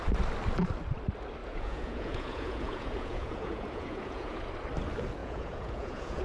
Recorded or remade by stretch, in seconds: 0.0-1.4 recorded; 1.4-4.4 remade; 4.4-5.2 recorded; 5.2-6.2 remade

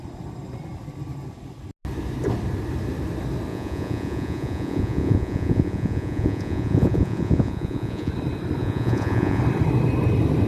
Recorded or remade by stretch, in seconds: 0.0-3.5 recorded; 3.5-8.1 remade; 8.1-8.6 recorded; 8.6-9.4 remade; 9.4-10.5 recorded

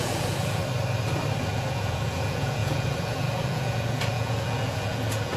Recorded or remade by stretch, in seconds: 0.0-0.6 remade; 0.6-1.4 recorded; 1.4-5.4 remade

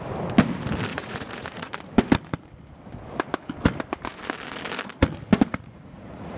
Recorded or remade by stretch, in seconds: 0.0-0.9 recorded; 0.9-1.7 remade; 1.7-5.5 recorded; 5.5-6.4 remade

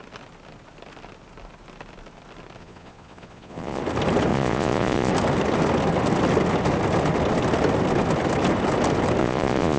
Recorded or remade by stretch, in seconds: 0.0-2.6 recorded; 2.6-3.8 remade; 3.8-4.3 recorded; 4.3-5.1 remade; 5.1-9.2 recorded; 9.2-9.8 remade

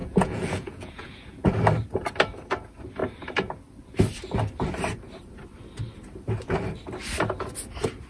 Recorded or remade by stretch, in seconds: 0.0-1.5 remade; 1.5-8.1 recorded